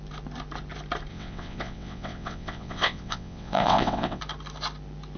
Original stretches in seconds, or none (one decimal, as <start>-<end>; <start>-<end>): 0.0-1.1; 4.2-5.2